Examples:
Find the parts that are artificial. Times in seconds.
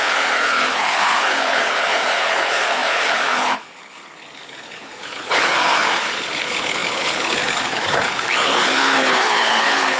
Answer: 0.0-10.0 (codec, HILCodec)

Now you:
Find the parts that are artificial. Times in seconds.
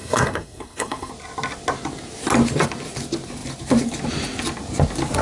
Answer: 0.0-1.1 (codec, SNAC)